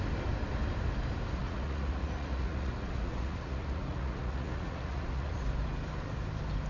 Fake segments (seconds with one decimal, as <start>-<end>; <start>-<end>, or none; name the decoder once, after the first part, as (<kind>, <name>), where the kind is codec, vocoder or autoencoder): 1.4-5.4 (vocoder, Vocos)